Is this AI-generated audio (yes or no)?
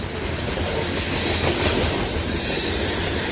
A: no